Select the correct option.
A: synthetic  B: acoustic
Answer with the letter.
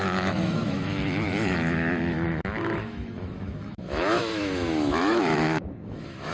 A